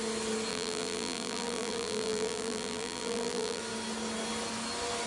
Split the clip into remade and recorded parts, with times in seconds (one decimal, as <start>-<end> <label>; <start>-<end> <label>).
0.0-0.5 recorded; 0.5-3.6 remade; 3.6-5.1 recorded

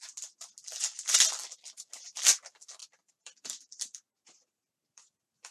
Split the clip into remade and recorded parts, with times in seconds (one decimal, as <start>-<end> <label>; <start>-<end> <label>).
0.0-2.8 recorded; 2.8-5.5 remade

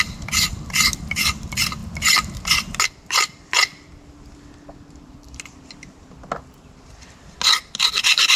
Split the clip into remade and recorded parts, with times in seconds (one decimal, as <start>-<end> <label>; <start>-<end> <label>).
0.0-8.4 recorded

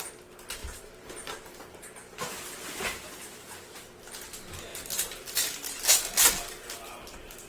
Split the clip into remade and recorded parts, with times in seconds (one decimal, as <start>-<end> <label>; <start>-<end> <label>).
0.0-0.6 recorded; 0.6-3.8 remade; 3.8-7.5 recorded

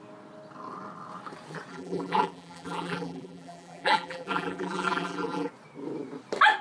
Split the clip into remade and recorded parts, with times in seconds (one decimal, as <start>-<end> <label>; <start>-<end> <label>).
0.0-1.7 recorded; 1.7-5.5 remade; 5.5-6.6 recorded